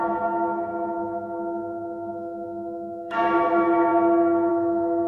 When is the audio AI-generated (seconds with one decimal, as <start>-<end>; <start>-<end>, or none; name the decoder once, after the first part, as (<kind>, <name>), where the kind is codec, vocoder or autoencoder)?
0.0-3.9 (autoencoder, DAC-VAE); 4.5-5.1